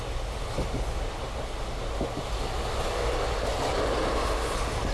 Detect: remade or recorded recorded